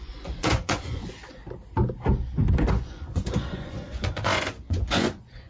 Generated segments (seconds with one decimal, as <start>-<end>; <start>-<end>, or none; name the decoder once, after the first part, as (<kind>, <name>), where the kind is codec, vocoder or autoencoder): 0.0-1.4 (vocoder, Vocos); 2.6-5.5